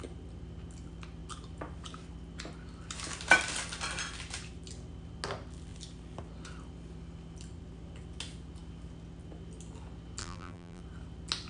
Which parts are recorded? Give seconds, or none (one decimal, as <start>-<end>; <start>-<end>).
0.0-10.2; 10.8-11.5